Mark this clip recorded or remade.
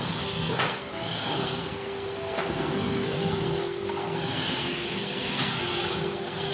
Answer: remade